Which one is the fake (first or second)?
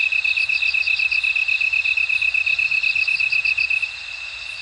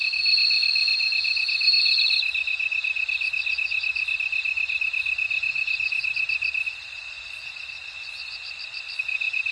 second